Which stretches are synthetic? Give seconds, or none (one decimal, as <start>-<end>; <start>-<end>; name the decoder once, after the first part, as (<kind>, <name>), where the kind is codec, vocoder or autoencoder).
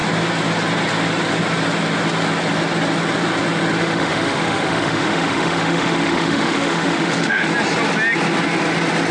3.8-7.5 (autoencoder, DAC-VAE)